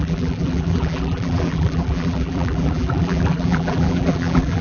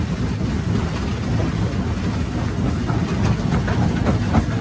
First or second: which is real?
second